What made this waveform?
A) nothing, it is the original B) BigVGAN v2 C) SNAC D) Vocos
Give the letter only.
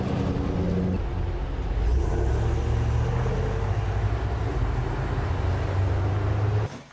A